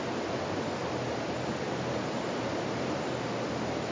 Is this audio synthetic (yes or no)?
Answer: no